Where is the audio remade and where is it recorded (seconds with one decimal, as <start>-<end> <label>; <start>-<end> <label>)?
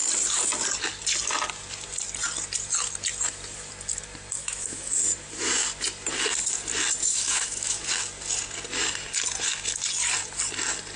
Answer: 0.0-4.4 recorded; 4.4-4.9 remade; 4.9-7.0 recorded; 7.0-7.8 remade; 7.8-11.0 recorded